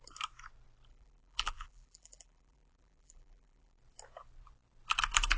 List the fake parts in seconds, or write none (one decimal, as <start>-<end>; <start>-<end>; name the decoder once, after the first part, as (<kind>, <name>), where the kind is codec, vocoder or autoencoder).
0.9-3.8 (vocoder, BigVGAN v2)